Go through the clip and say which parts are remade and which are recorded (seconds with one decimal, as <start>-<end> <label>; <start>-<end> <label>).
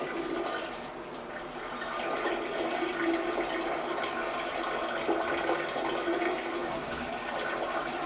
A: 0.0-6.6 recorded; 6.6-7.1 remade; 7.1-8.1 recorded